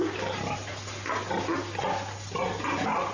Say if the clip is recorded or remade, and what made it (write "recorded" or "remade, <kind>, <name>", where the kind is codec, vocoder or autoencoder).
recorded